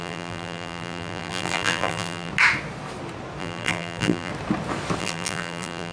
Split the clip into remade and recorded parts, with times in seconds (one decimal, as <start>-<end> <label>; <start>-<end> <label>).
0.0-2.3 remade; 2.3-3.4 recorded; 3.4-4.3 remade; 4.3-5.0 recorded; 5.0-5.9 remade